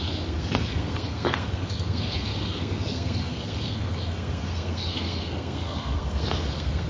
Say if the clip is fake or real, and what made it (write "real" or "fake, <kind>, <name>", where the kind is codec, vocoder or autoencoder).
fake, codec, SNAC